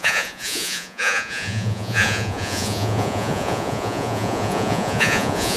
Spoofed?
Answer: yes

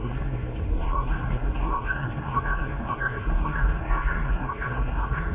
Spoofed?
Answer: yes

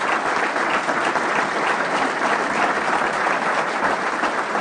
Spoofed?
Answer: no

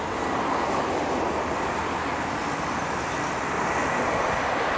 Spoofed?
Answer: no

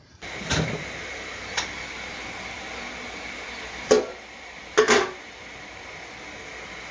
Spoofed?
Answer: no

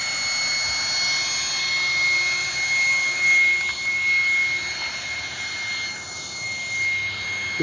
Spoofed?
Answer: no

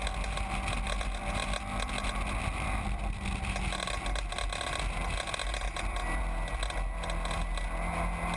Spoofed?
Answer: no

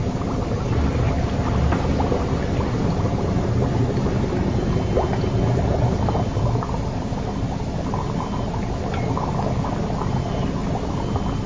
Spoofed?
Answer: no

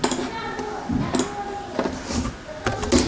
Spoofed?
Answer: no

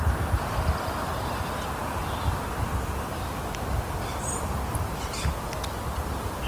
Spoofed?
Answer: no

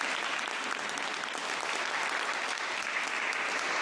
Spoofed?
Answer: no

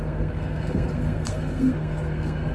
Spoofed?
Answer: yes